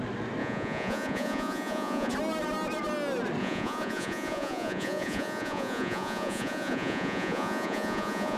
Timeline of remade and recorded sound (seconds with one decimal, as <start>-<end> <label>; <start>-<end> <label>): 0.0-0.4 recorded; 0.4-2.1 remade; 2.1-3.4 recorded; 3.4-8.4 remade